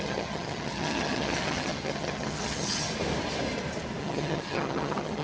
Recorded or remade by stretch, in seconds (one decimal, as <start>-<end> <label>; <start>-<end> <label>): 0.0-2.9 remade; 2.9-4.0 recorded; 4.0-5.2 remade